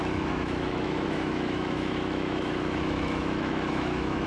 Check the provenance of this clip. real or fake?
fake